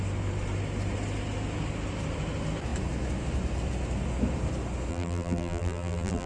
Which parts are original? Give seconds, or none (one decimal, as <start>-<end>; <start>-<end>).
0.0-4.9